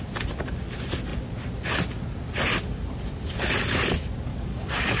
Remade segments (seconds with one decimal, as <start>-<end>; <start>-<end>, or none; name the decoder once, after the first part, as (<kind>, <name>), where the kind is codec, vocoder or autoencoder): 4.3-5.0 (codec, DAC)